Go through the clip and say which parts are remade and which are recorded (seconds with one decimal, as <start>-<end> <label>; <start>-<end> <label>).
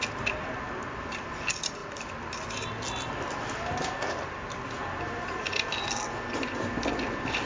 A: 0.0-7.5 recorded